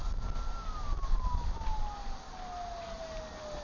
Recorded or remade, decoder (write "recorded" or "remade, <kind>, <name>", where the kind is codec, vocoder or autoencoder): recorded